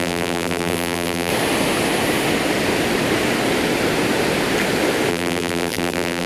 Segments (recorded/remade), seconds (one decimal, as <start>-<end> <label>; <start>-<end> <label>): 0.0-1.3 remade; 1.3-5.1 recorded; 5.1-6.3 remade